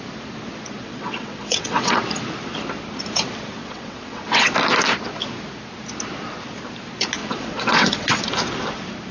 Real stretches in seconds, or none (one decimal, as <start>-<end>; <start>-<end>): 0.0-0.8; 2.0-3.6; 4.5-7.2; 8.2-9.1

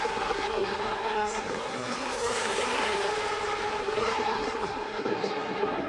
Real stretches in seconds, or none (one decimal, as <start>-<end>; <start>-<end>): 3.1-3.8

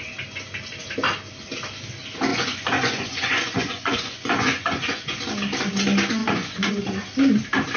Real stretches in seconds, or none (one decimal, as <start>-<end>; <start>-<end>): 0.0-2.3; 5.2-6.2; 6.7-7.8

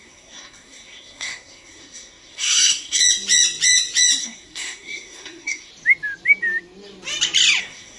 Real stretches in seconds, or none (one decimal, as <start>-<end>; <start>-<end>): 3.0-4.2; 5.7-7.6

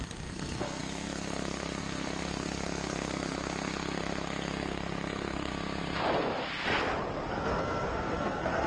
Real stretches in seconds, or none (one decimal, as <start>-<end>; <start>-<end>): 5.5-7.3